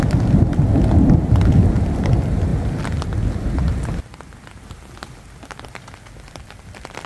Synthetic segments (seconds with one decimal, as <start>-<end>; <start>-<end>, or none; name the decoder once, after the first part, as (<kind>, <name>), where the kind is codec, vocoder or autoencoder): none